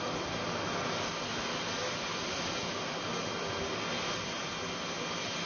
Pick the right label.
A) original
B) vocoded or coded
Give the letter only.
A